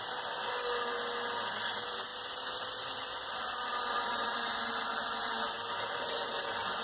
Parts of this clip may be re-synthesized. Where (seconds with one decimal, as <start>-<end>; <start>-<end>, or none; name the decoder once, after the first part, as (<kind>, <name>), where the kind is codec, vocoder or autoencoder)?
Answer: 2.1-4.7 (vocoder, BigVGAN v2)